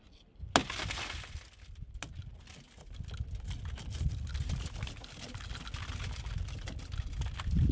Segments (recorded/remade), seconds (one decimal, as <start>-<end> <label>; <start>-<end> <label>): 0.0-7.7 recorded